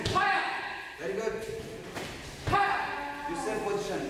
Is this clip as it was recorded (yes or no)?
yes